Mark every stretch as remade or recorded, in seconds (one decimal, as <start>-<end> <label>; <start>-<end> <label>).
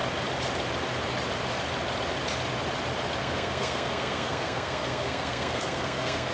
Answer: 0.0-3.2 recorded; 3.2-6.3 remade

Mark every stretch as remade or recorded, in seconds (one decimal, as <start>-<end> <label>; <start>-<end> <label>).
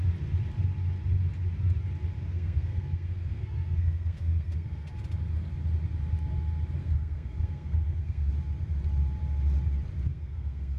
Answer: 0.0-2.2 recorded; 2.2-4.9 remade; 4.9-6.8 recorded; 6.8-8.3 remade; 8.3-10.1 recorded; 10.1-10.8 remade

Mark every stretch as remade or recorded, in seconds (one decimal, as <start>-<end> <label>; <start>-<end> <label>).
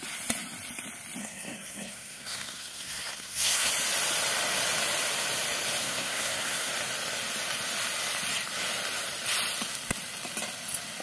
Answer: 0.0-1.2 recorded; 1.2-3.7 remade; 3.7-5.8 recorded; 5.8-6.7 remade; 6.7-11.0 recorded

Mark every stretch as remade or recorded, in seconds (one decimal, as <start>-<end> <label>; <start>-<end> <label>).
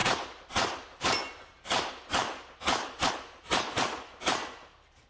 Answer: 0.0-5.1 recorded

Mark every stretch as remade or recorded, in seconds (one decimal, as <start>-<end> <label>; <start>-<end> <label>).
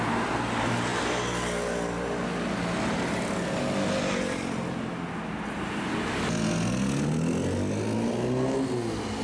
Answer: 0.0-9.2 recorded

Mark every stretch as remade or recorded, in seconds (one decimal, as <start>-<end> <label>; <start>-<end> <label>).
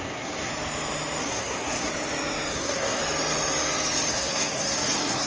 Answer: 0.0-0.5 remade; 0.5-1.2 recorded; 1.2-1.9 remade; 1.9-2.5 recorded; 2.5-3.0 remade; 3.0-4.1 recorded; 4.1-5.3 remade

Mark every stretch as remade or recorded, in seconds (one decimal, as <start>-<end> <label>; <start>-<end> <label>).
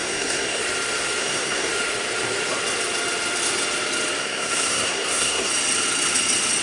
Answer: 0.0-0.6 remade; 0.6-1.2 recorded; 1.2-1.7 remade; 1.7-4.2 recorded; 4.2-5.5 remade; 5.5-6.6 recorded